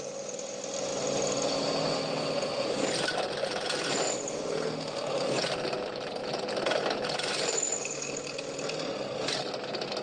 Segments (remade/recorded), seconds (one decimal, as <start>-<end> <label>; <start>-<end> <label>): 0.0-10.0 recorded